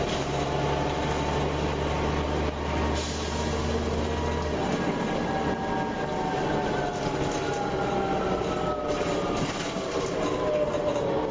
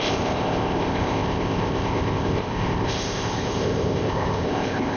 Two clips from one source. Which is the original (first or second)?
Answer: first